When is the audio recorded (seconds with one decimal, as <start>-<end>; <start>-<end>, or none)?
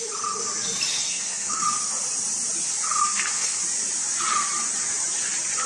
0.0-0.9; 1.8-3.0; 3.6-5.7